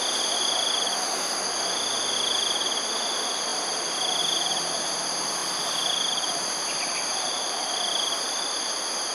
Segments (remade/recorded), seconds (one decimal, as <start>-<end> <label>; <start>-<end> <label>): 0.0-5.4 recorded; 5.4-8.7 remade; 8.7-9.1 recorded